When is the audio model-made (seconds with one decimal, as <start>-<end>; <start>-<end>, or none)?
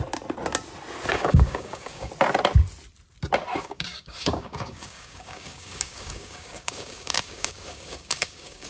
1.1-2.1; 3.5-8.7